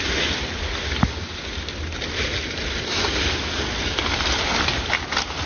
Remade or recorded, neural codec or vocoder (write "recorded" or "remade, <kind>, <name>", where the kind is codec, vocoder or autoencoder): recorded